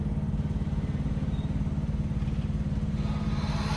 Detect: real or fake real